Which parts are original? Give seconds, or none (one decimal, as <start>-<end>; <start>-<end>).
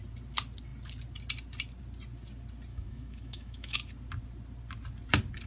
0.0-2.7; 3.8-5.5